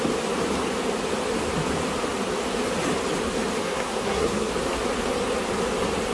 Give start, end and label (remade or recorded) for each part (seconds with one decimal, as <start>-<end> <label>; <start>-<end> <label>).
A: 0.0-3.6 recorded; 3.6-4.5 remade; 4.5-6.1 recorded